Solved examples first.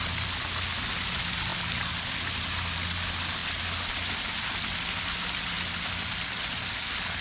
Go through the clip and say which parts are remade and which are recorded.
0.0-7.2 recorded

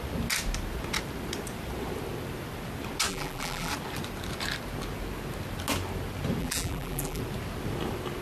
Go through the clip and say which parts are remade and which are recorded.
0.0-3.1 recorded; 3.1-3.7 remade; 3.7-6.4 recorded; 6.4-7.2 remade; 7.2-8.2 recorded

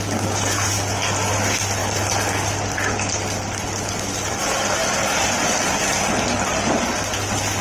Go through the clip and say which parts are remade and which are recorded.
0.0-7.6 recorded

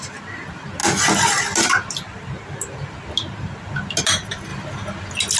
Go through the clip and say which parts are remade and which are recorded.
0.0-5.4 recorded

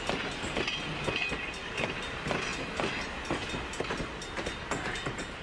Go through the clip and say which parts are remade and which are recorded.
0.0-5.4 recorded